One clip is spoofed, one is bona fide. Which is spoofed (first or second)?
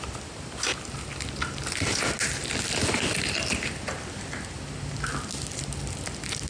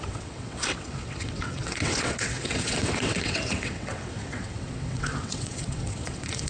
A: second